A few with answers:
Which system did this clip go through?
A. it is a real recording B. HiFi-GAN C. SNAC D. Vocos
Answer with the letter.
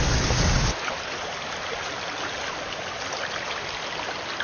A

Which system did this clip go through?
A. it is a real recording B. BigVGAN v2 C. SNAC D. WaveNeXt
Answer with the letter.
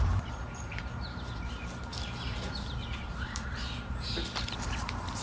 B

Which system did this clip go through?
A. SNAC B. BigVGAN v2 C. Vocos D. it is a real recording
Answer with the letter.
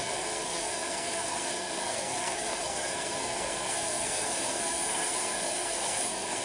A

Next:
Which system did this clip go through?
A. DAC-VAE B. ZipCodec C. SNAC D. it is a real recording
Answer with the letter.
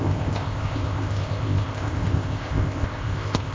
B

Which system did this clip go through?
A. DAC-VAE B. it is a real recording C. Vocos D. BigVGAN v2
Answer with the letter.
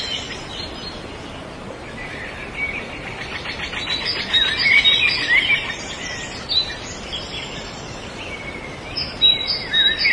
B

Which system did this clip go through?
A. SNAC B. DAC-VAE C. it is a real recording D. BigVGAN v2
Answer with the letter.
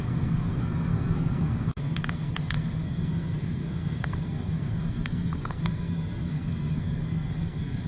A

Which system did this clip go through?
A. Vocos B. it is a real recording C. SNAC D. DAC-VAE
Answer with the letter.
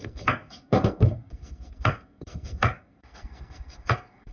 C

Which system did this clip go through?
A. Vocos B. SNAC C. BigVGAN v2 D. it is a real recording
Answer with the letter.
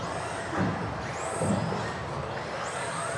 D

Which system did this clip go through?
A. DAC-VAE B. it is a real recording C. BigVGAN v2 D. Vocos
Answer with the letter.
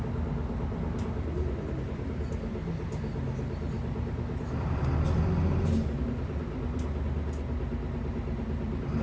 B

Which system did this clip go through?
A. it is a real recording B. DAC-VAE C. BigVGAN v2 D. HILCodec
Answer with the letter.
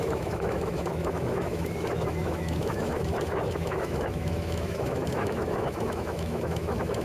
B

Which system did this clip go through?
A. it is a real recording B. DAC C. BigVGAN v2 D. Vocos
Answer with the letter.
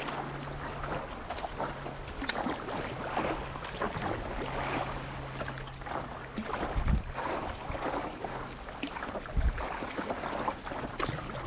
A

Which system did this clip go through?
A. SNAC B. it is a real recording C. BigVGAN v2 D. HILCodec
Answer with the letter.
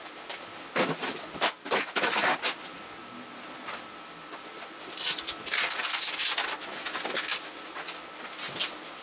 B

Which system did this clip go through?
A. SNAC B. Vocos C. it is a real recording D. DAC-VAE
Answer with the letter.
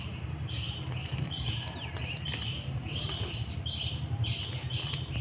C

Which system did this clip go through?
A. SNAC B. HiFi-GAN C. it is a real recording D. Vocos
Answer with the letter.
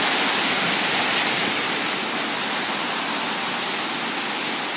C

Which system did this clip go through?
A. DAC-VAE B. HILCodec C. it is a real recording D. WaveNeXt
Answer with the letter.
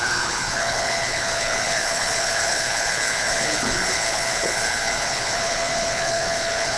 B